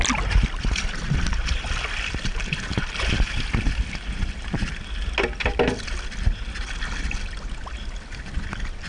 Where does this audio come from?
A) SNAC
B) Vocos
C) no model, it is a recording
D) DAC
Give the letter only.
C